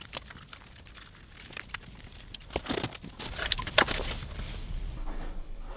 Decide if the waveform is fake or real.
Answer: real